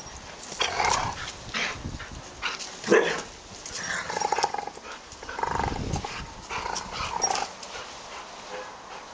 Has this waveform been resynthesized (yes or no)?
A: no